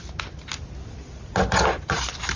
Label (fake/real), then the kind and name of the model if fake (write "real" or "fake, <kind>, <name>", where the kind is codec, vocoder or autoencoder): real